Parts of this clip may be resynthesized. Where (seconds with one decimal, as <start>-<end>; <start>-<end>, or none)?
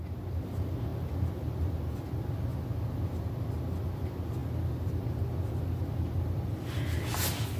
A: none